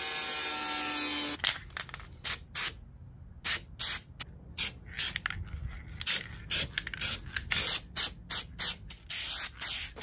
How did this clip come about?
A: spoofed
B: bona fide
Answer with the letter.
B